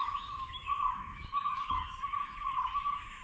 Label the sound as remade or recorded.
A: remade